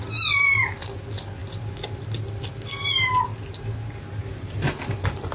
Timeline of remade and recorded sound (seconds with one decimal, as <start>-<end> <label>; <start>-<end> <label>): 0.0-4.3 recorded; 4.3-5.3 remade